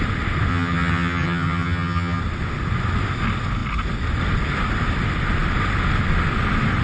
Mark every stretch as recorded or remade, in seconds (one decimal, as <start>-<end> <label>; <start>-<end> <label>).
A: 0.0-0.5 recorded; 0.5-2.2 remade; 2.2-6.8 recorded